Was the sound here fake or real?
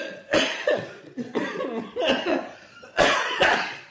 fake